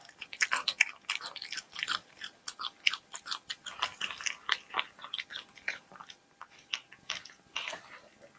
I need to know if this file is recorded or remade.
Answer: recorded